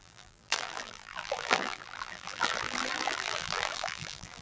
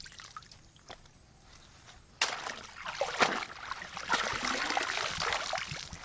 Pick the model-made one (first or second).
first